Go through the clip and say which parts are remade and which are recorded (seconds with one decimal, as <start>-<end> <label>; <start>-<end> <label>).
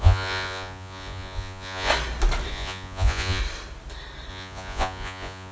0.0-1.9 remade; 1.9-2.5 recorded; 2.5-3.4 remade; 3.4-4.3 recorded; 4.3-5.5 remade